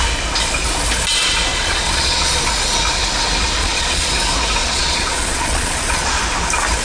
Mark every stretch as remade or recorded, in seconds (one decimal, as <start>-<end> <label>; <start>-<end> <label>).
0.0-1.5 recorded; 1.5-2.4 remade; 2.4-3.6 recorded; 3.6-4.1 remade; 4.1-4.6 recorded; 4.6-6.2 remade; 6.2-6.8 recorded

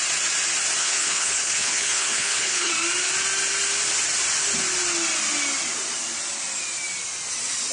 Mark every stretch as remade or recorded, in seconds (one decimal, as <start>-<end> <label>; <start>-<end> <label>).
0.0-0.8 recorded; 0.8-2.7 remade; 2.7-7.7 recorded

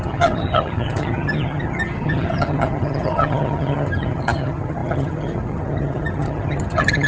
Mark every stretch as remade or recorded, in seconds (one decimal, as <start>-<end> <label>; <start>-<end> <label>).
0.0-7.1 remade

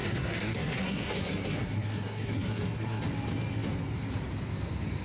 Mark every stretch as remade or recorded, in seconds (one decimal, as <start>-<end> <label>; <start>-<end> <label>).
0.0-3.0 remade; 3.0-5.0 recorded